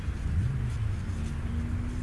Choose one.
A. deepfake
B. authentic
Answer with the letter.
B